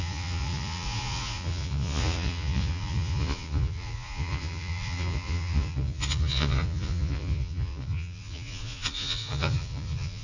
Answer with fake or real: fake